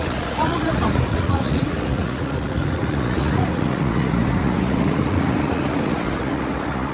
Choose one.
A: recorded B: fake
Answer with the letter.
B